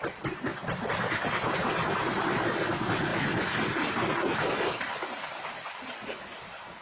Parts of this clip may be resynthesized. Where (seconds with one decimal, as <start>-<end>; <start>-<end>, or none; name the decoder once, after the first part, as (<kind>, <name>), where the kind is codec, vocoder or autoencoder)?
none